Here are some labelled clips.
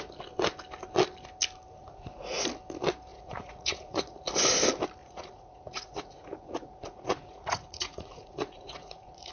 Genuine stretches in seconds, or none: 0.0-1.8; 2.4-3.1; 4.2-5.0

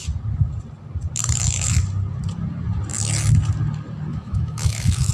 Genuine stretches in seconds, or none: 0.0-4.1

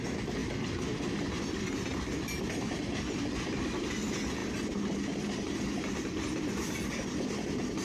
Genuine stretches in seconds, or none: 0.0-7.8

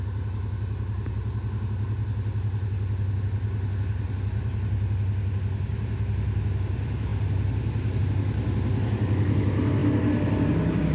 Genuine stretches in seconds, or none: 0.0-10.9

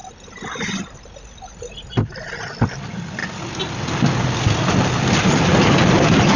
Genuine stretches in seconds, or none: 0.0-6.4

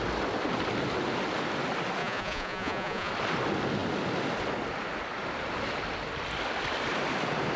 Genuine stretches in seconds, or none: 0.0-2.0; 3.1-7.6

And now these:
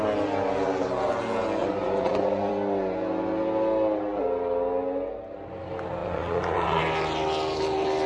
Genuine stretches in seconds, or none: 0.0-1.6; 2.5-6.0; 6.8-8.1